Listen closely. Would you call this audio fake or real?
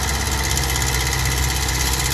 real